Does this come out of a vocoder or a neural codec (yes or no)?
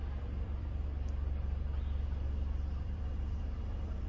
yes